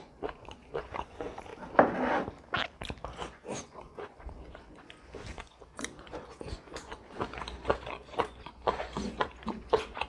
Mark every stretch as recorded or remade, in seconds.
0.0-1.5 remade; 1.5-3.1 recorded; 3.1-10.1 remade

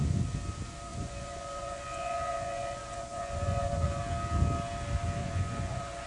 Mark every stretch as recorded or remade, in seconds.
0.0-0.9 recorded; 0.9-4.0 remade; 4.0-5.2 recorded; 5.2-6.1 remade

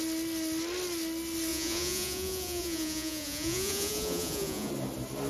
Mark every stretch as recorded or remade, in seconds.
0.0-1.5 recorded; 1.5-4.7 remade; 4.7-5.3 recorded

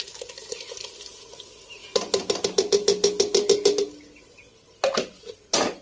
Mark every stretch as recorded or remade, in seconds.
0.0-5.8 recorded

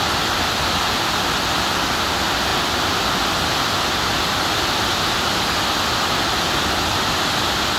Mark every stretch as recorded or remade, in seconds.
0.0-7.8 recorded

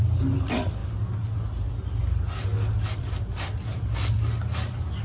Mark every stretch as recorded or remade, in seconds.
0.0-5.0 recorded